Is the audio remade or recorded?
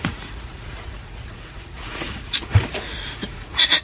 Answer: remade